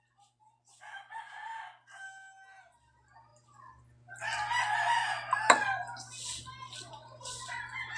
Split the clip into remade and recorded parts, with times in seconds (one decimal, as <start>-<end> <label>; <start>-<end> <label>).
0.0-8.0 recorded